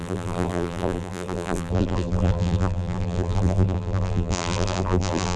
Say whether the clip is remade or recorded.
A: remade